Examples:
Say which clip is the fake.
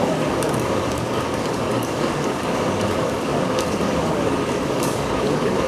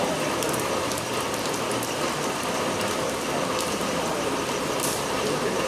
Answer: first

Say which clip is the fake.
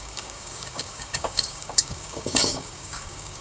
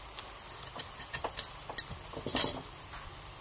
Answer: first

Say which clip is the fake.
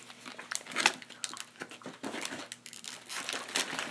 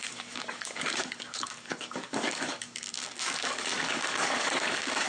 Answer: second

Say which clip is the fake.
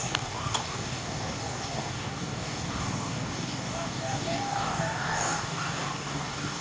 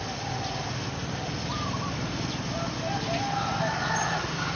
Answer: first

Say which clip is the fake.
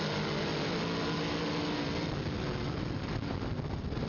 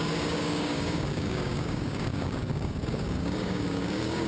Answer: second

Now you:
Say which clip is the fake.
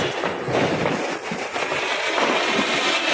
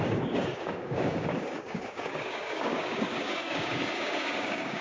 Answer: second